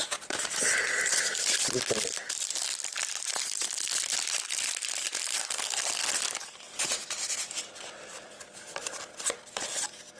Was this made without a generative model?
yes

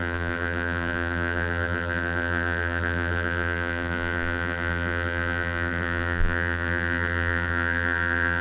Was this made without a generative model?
no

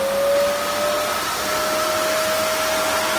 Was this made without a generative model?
yes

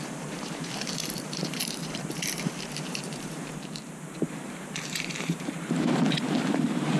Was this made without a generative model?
no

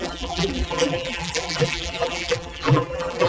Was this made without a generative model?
no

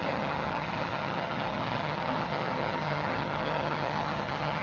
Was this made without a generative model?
no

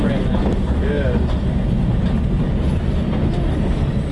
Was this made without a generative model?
yes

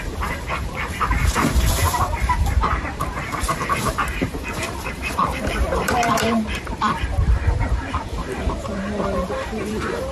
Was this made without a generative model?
no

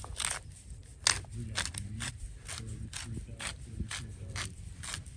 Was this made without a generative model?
yes